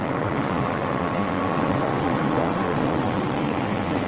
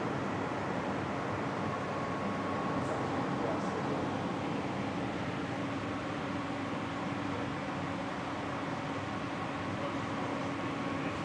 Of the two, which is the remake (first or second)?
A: first